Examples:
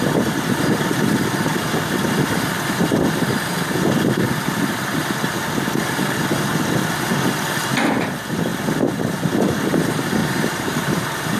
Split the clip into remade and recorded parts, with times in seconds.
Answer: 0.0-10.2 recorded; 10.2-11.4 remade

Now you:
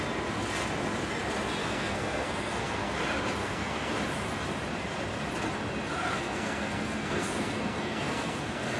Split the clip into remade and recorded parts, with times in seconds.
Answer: 0.0-1.6 recorded; 1.6-2.9 remade; 2.9-3.4 recorded; 3.4-3.9 remade; 3.9-6.1 recorded; 6.1-8.8 remade

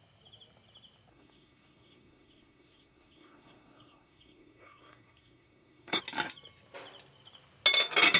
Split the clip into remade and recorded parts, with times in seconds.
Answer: 0.0-1.1 recorded; 1.1-6.0 remade; 6.0-8.2 recorded

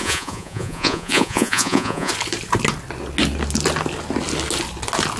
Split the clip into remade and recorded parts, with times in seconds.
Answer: 0.0-2.1 remade; 2.1-5.2 recorded

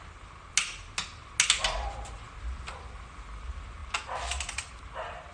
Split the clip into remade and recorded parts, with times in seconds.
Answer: 0.0-5.3 recorded